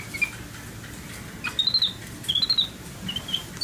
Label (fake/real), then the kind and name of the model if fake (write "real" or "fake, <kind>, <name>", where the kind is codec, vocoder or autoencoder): real